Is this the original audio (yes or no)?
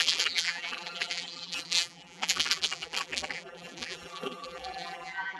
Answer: no